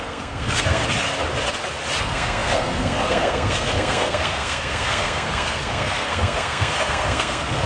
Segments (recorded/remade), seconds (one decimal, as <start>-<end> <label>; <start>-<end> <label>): 0.0-0.8 remade; 0.8-2.0 recorded; 2.0-7.7 remade